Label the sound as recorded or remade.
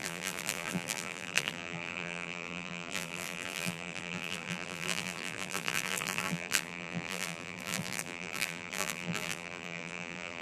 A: remade